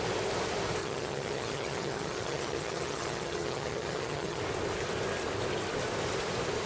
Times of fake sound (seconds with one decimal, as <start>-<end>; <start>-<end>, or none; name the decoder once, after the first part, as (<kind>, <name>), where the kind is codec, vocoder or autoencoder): 0.8-4.4 (vocoder, HiFi-GAN)